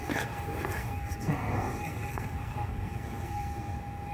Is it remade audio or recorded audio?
remade